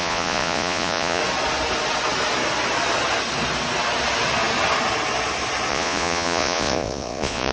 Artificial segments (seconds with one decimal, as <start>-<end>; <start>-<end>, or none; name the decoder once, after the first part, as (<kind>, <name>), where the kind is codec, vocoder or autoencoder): 0.0-1.2 (vocoder, Vocos); 5.7-7.5